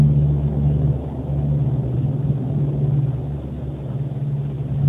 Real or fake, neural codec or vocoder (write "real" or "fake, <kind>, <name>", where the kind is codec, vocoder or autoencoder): real